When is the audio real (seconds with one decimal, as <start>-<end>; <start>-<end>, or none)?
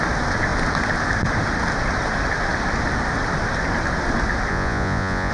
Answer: 0.0-4.5